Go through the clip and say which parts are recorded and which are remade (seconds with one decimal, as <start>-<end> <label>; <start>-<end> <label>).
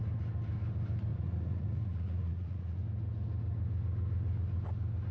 0.0-1.1 recorded; 1.1-2.8 remade; 2.8-5.1 recorded